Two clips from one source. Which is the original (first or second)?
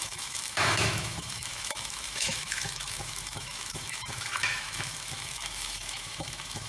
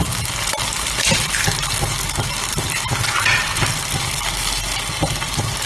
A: second